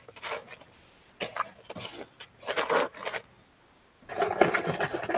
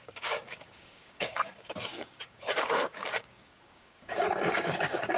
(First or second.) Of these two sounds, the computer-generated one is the second